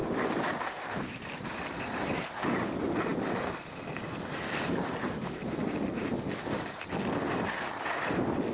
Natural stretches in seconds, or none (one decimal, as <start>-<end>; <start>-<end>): 0.0-8.5